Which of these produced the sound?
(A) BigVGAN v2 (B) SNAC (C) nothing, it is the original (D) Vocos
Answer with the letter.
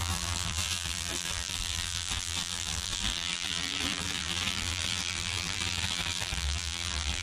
A